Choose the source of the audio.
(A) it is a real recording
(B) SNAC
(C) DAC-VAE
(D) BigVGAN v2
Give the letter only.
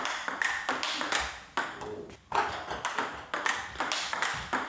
A